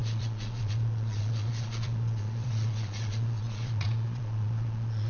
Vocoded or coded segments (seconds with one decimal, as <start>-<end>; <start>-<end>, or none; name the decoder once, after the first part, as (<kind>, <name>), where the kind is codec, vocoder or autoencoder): 0.0-5.1 (vocoder, Vocos)